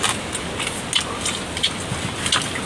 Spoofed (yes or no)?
no